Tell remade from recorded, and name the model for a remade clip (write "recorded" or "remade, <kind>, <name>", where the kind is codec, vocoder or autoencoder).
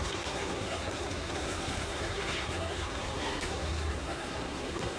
remade, codec, SNAC